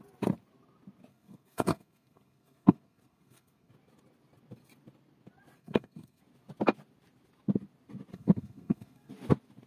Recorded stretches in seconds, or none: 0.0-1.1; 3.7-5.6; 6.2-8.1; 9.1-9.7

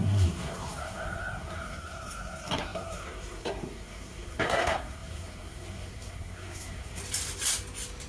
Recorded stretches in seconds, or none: 7.0-8.1

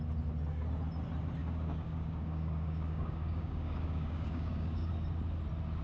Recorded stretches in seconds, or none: 0.0-1.4; 4.9-5.8

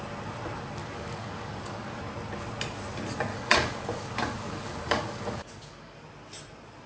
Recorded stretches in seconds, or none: 0.0-0.8; 2.0-3.3; 6.0-6.9